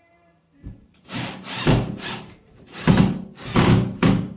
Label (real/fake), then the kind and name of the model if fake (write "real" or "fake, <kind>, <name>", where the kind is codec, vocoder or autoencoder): fake, vocoder, BigVGAN v2